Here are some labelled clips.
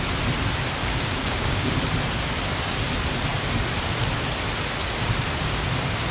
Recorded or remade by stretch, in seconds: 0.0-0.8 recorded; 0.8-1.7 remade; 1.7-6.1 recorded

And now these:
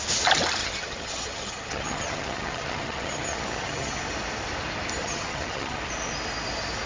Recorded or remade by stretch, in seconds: 0.0-0.6 recorded; 0.6-4.0 remade; 4.0-5.0 recorded; 5.0-5.8 remade; 5.8-6.9 recorded